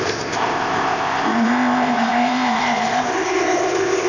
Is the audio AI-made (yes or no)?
yes